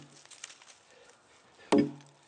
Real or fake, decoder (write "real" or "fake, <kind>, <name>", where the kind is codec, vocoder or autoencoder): real